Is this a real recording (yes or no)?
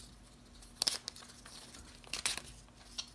yes